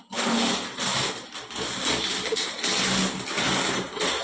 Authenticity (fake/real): real